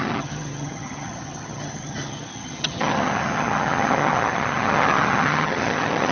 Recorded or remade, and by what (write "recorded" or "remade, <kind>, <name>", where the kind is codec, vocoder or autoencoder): remade, vocoder, HiFi-GAN